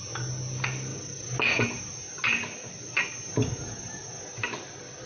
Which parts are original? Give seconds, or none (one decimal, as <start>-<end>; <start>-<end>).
0.0-5.1